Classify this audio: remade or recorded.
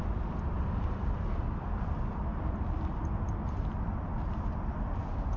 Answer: recorded